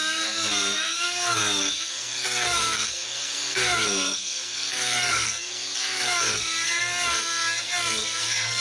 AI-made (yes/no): yes